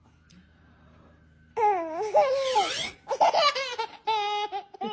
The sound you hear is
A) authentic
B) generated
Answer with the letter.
A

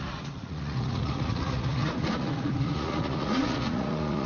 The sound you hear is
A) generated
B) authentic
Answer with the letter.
A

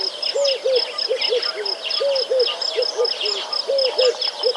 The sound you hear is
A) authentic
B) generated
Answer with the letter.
A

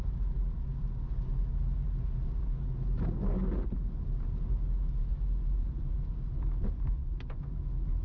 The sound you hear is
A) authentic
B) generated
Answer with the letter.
A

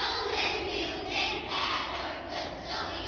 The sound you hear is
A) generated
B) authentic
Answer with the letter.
B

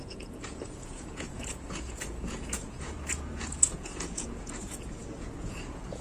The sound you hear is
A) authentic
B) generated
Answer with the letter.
B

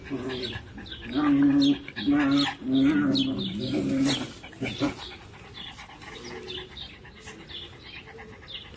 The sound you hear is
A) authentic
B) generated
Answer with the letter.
A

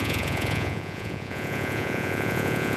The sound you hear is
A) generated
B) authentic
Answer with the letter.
A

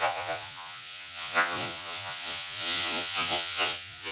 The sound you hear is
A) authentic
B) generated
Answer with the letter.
B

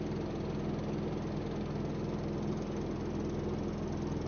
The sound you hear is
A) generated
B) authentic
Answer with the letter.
B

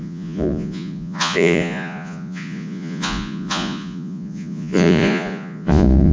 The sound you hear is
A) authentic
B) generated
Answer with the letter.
B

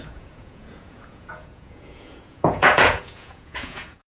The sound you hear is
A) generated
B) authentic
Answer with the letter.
A